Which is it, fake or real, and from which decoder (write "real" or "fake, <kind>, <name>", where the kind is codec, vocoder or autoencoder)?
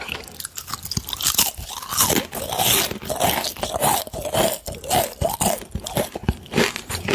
real